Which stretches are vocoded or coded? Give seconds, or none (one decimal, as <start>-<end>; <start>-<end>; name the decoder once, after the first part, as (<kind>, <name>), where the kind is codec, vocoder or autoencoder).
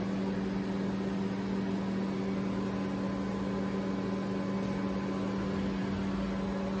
none